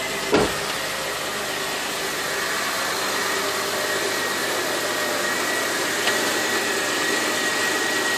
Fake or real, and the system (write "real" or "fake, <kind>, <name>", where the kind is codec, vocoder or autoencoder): real